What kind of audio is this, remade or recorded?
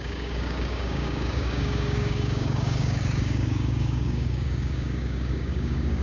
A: remade